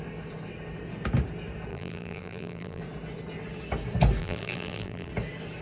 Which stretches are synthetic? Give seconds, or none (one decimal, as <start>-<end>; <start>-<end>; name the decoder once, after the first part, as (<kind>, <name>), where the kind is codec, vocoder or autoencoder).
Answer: 1.7-2.8 (vocoder, BigVGAN v2); 4.2-5.1